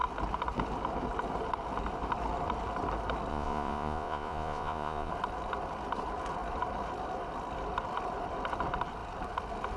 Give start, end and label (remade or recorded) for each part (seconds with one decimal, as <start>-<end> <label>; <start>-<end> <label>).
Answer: 0.0-3.3 recorded; 3.3-5.1 remade; 5.1-9.8 recorded

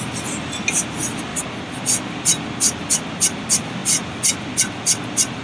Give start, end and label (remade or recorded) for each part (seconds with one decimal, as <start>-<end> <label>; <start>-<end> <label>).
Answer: 0.0-5.4 recorded

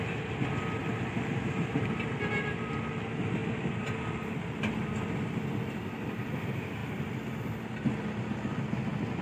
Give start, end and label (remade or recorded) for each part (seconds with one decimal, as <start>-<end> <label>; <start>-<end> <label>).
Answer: 0.0-0.8 recorded; 0.8-1.8 remade; 1.8-9.2 recorded

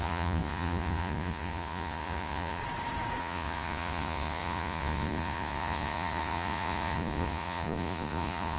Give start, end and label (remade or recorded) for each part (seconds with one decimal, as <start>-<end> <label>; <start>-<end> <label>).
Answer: 0.0-2.6 remade; 2.6-3.2 recorded; 3.2-8.6 remade